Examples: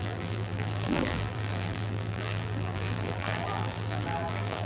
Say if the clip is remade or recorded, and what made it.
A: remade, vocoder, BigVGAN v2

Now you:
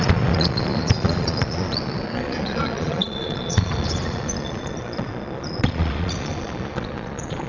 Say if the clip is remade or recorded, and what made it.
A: remade, vocoder, Vocos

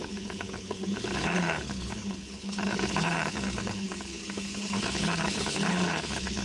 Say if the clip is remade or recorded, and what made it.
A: remade, codec, HILCodec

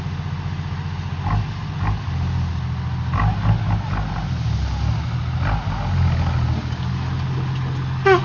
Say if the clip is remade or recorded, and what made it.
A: recorded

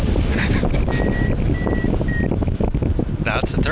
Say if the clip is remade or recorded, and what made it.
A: recorded